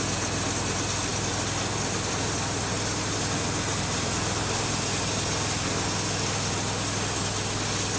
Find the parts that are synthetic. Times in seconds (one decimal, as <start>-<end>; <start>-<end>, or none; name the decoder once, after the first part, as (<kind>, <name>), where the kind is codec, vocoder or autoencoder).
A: none